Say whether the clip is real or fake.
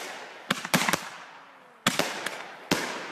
real